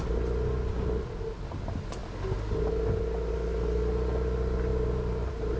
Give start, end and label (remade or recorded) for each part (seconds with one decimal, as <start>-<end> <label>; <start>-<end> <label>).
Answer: 0.0-4.7 recorded; 4.7-5.6 remade